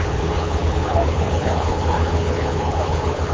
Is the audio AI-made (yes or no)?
yes